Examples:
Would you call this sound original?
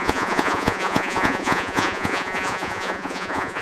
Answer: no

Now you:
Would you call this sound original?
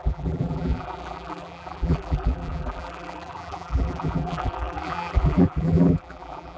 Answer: no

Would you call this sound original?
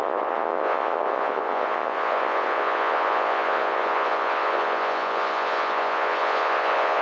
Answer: no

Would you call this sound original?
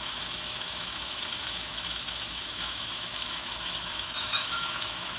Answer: no